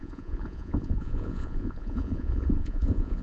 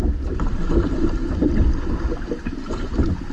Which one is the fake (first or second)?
first